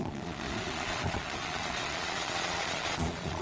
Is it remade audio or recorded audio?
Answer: remade